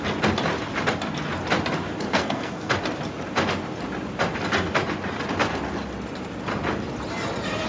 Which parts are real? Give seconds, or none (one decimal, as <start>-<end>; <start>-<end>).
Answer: 0.0-2.1; 2.7-7.7